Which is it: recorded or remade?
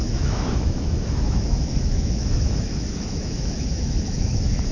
remade